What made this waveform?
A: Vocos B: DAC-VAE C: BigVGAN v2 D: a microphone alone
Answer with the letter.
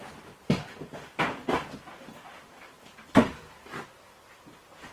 D